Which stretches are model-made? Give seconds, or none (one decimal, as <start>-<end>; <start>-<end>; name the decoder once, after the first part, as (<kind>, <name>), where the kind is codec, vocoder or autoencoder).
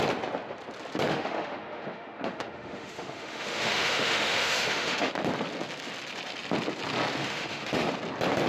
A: 1.1-5.1 (autoencoder, DAC-VAE); 7.2-7.9